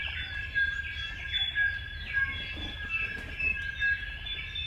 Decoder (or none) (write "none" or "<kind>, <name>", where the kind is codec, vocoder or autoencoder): none